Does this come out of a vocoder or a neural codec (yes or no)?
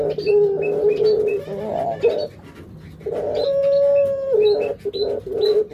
no